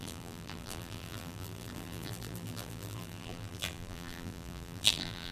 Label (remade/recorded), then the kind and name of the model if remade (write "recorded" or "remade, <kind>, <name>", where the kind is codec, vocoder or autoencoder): remade, vocoder, BigVGAN v2